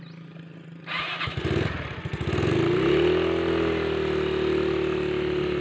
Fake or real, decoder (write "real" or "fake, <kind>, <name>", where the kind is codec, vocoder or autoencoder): real